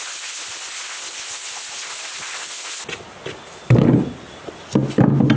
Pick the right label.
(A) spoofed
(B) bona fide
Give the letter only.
B